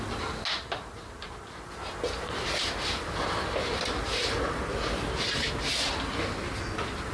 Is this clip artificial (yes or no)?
no